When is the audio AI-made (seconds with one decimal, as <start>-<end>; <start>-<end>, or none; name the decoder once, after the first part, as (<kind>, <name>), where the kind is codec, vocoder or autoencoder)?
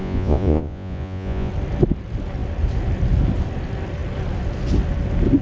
0.0-1.5 (vocoder, Vocos)